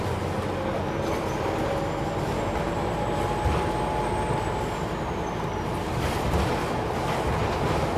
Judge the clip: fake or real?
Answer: real